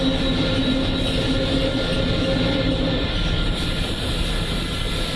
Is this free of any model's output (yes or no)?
yes